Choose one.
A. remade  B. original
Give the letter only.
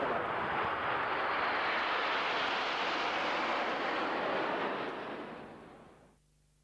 B